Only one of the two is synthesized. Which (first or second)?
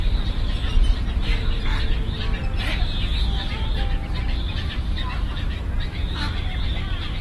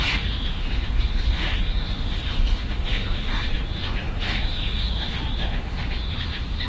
second